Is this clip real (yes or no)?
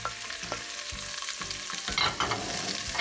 yes